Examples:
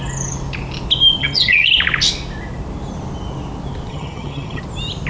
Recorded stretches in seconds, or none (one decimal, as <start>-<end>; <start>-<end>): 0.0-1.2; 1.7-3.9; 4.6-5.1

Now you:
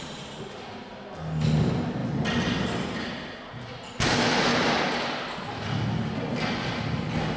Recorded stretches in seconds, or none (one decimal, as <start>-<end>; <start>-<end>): 0.0-7.4

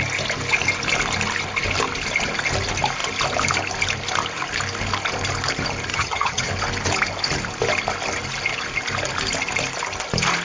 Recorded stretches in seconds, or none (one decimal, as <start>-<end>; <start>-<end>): 0.0-5.9; 6.5-10.4